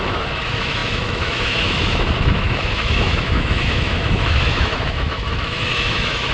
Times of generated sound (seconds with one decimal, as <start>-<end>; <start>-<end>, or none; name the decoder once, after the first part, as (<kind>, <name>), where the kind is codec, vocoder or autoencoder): 0.0-6.3 (autoencoder, DAC-VAE)